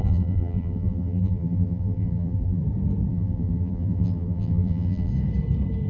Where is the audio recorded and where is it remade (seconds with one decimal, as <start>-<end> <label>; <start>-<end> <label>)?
0.0-2.6 remade; 2.6-3.1 recorded; 3.1-5.1 remade; 5.1-5.9 recorded